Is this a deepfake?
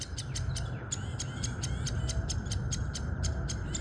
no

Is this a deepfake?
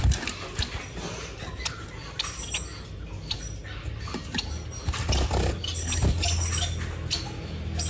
no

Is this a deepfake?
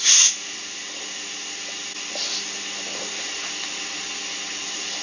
no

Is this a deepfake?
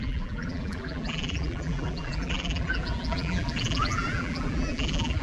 yes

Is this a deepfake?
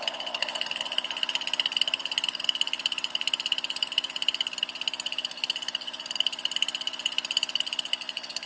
yes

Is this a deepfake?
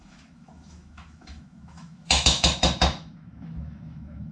yes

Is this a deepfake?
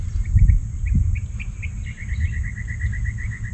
no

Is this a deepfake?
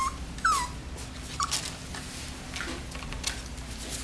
no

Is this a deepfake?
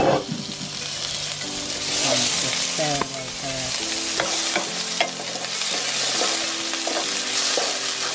no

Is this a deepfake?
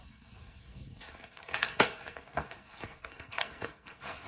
yes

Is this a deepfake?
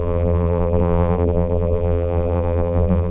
yes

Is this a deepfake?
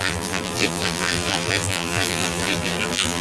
yes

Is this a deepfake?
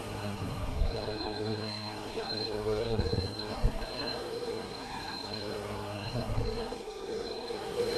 yes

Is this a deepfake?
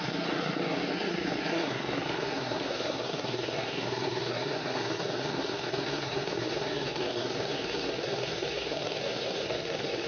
yes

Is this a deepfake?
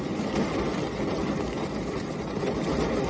no